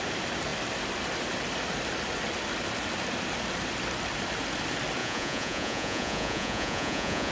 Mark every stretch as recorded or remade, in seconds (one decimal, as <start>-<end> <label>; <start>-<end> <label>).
0.0-5.0 recorded; 5.0-7.3 remade

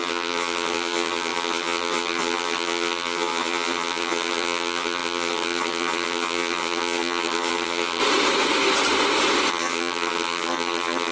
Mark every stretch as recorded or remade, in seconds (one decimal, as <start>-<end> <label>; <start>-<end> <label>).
0.0-8.0 remade; 8.0-9.5 recorded; 9.5-11.1 remade

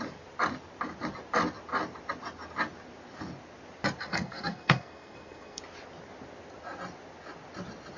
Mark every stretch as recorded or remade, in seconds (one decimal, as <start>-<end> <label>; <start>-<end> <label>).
0.0-4.1 recorded; 4.1-5.6 remade; 5.6-8.0 recorded

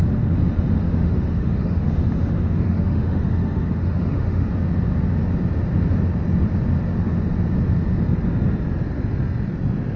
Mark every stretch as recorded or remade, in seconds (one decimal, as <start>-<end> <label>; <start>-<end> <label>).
0.0-0.8 recorded; 0.8-4.5 remade; 4.5-10.0 recorded